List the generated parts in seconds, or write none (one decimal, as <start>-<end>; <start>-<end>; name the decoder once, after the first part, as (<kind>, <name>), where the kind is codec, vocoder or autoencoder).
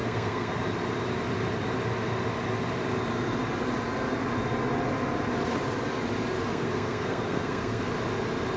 0.0-0.6 (codec, SNAC); 6.5-7.9